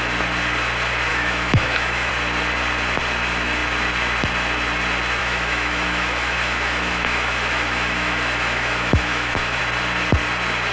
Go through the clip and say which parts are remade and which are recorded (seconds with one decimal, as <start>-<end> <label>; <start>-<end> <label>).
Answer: 0.0-1.1 recorded; 1.1-2.1 remade; 2.1-5.2 recorded; 5.2-9.6 remade; 9.6-10.7 recorded